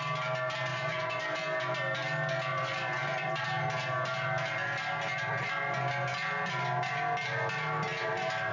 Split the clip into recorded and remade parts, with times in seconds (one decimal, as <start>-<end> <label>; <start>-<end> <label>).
0.0-0.7 recorded; 0.7-1.2 remade; 1.2-2.5 recorded; 2.5-3.3 remade; 3.3-8.5 recorded